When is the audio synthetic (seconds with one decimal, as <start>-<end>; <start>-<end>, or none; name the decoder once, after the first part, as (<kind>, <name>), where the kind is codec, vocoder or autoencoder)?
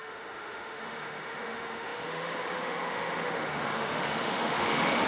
0.0-5.1 (autoencoder, DAC-VAE)